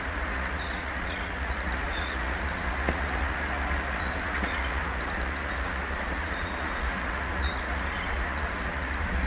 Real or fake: fake